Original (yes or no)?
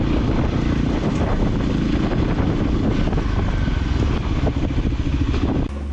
yes